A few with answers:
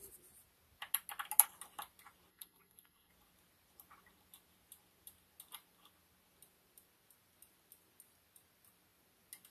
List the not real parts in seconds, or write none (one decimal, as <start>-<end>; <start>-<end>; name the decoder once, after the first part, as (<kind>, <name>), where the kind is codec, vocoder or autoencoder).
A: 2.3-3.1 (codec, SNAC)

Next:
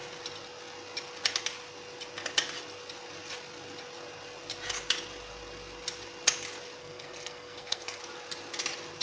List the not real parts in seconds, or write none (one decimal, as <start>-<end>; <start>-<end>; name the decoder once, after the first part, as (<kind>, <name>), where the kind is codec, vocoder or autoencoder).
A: 6.8-8.0 (codec, SNAC)

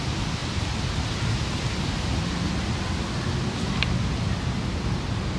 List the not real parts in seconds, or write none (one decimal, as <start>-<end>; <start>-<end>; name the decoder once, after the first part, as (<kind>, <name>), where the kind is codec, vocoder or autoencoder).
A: none